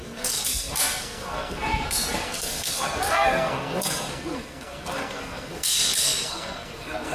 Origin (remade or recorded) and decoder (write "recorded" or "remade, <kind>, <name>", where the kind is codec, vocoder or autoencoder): remade, codec, SNAC